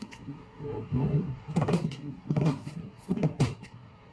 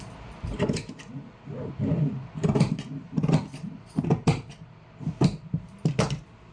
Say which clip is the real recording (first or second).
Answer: second